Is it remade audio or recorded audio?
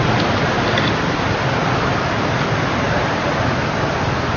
recorded